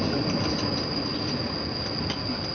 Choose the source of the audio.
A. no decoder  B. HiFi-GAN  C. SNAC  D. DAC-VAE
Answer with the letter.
A